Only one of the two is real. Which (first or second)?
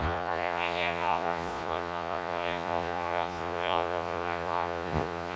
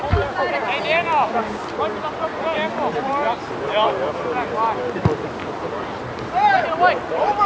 second